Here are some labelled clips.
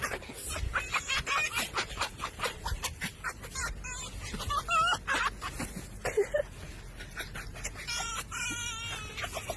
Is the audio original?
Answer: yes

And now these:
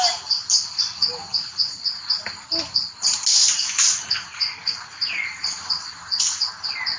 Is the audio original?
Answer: yes